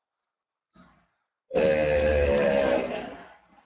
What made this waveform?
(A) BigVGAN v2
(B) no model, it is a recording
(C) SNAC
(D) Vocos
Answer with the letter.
B